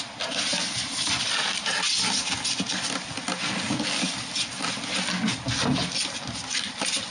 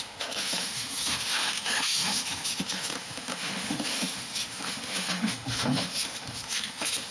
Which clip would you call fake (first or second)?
second